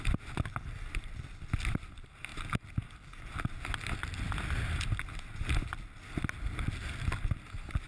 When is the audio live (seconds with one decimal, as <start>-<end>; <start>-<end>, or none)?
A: 0.0-7.9